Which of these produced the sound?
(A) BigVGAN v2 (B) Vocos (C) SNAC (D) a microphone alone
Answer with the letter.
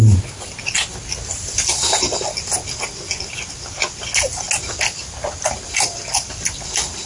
D